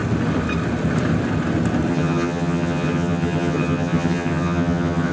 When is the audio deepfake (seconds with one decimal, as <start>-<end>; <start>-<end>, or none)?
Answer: 1.9-5.1